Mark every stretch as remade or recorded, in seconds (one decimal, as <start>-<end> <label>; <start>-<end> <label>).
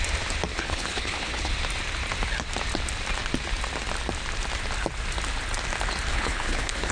0.0-0.5 recorded; 0.5-1.5 remade; 1.5-6.1 recorded; 6.1-6.9 remade